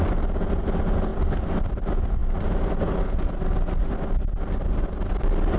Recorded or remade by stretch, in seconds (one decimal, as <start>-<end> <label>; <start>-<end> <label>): 0.0-5.6 recorded